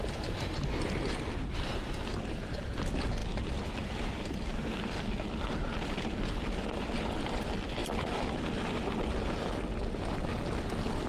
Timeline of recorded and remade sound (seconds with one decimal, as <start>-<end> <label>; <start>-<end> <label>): 0.0-7.8 recorded; 7.8-8.5 remade; 8.5-11.1 recorded